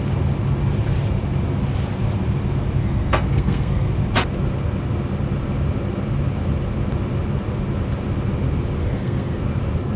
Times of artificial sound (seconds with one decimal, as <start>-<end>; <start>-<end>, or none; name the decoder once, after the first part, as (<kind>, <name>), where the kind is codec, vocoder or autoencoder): 2.8-3.9 (codec, SNAC); 8.8-9.4